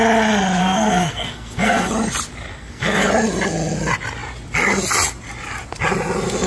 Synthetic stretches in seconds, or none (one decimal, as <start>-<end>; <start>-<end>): 0.6-1.9; 2.5-3.1